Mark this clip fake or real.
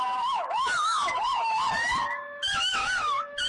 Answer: fake